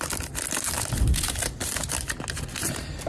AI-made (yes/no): no